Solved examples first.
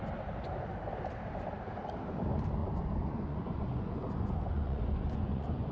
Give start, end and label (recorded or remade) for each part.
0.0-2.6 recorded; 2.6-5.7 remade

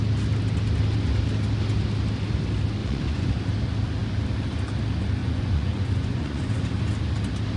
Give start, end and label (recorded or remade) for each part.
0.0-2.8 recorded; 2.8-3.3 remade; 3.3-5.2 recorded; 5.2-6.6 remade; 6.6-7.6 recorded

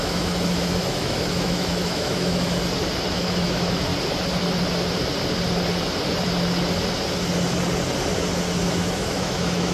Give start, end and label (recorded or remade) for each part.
0.0-2.6 remade; 2.6-3.1 recorded; 3.1-3.9 remade; 3.9-8.7 recorded; 8.7-9.7 remade

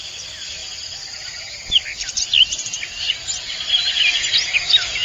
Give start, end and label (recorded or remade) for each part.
0.0-5.0 recorded

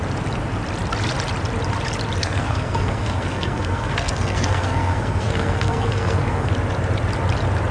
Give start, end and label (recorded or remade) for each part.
0.0-2.2 recorded; 2.2-6.5 remade; 6.5-7.7 recorded

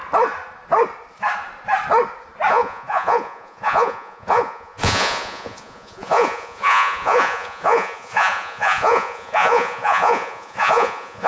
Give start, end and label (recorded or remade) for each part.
0.0-2.5 recorded; 2.5-11.3 remade

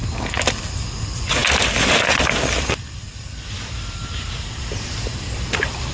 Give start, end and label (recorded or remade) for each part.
0.0-5.9 recorded